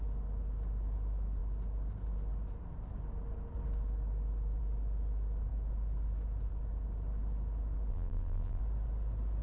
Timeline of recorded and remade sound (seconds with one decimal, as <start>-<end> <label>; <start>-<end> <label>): 0.0-7.9 recorded; 7.9-8.6 remade; 8.6-9.4 recorded